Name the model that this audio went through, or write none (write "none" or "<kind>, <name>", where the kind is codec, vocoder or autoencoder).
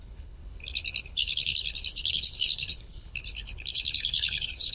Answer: codec, HILCodec